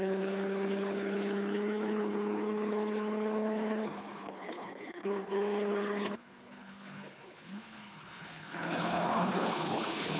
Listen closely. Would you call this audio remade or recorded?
remade